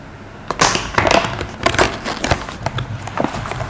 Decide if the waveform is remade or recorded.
recorded